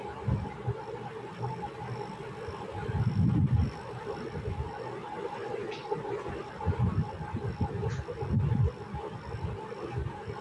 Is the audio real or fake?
real